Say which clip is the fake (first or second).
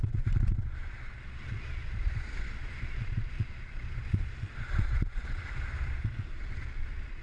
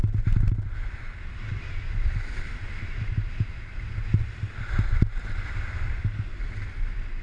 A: first